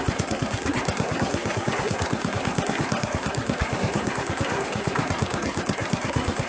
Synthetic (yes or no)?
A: yes